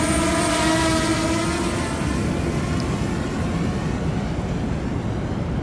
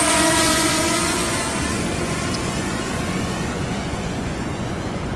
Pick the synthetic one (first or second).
second